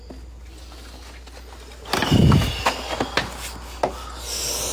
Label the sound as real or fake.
real